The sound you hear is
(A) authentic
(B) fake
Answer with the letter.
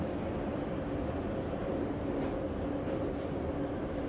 A